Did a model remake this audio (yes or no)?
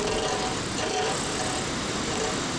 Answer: no